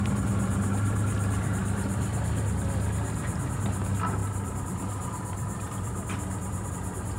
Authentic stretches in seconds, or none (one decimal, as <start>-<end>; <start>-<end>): 0.0-7.2